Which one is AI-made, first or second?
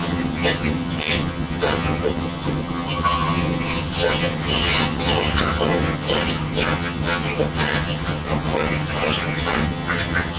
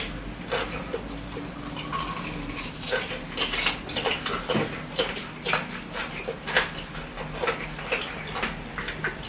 first